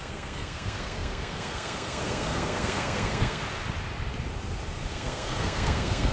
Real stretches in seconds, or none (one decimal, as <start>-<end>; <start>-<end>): 3.4-4.9